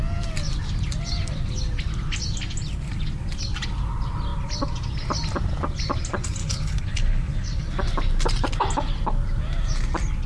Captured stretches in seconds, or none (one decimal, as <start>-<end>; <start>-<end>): 0.0-6.4; 7.6-10.3